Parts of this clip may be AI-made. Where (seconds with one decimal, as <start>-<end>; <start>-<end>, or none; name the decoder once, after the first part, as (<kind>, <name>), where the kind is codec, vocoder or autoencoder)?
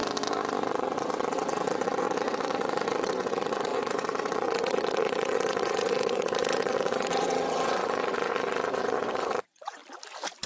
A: 0.7-9.8 (vocoder, WaveNeXt)